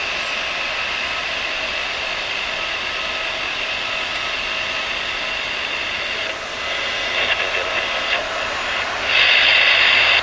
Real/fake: real